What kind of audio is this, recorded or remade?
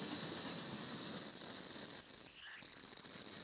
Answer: recorded